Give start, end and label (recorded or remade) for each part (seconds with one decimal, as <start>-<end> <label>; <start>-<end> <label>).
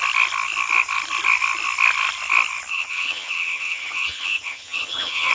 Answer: 0.0-2.7 recorded; 2.7-5.3 remade